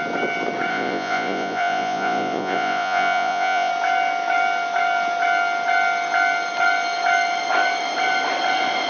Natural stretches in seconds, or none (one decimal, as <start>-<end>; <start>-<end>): 0.0-0.7; 3.7-8.9